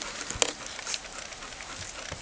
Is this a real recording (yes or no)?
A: yes